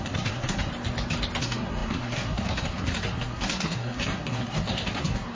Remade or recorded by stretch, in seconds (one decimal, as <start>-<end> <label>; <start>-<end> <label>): 0.0-0.7 remade; 0.7-1.4 recorded; 1.4-5.4 remade